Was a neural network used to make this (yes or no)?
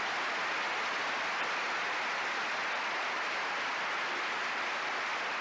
no